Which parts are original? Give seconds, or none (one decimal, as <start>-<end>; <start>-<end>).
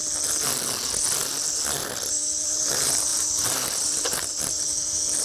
0.0-2.1